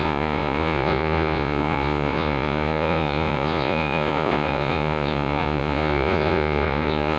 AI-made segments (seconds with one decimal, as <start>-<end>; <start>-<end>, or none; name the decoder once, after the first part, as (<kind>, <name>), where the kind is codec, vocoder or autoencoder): 0.0-7.2 (vocoder, Vocos)